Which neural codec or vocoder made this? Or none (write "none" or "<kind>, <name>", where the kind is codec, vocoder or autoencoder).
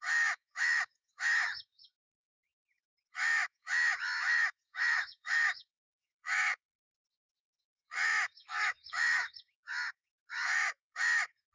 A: autoencoder, DAC-VAE